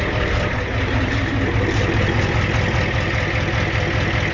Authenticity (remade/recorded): recorded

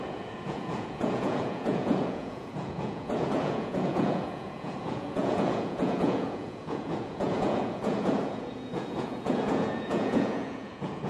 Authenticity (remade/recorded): remade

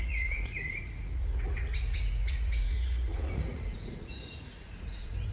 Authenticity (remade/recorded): remade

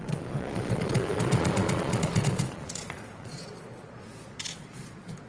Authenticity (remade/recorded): remade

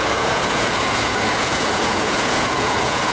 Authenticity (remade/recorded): remade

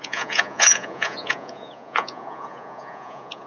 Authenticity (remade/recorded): remade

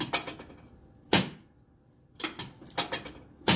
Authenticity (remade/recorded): recorded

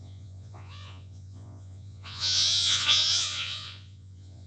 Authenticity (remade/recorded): remade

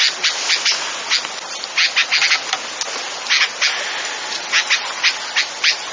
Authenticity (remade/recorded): recorded